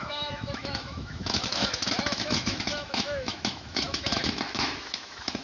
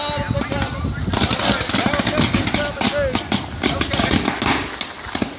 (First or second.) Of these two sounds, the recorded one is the second